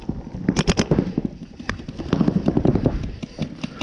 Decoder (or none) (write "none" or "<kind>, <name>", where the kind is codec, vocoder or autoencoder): none